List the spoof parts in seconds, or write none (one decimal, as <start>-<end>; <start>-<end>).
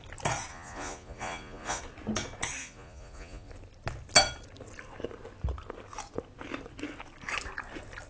0.5-1.8; 2.6-3.5